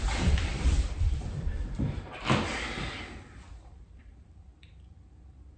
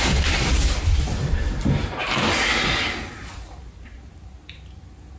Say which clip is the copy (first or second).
first